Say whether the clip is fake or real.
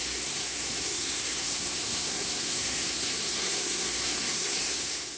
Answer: fake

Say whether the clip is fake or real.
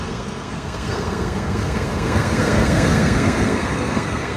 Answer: fake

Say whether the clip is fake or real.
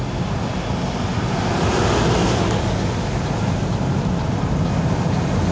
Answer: real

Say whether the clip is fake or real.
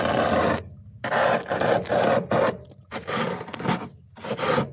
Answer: real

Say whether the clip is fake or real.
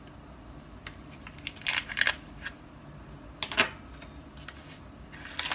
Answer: real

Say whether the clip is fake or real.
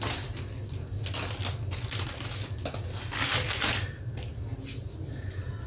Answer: real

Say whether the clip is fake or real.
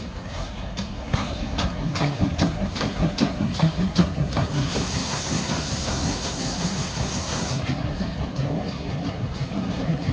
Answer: fake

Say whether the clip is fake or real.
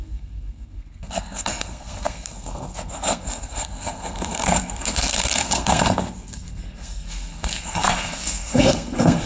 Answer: fake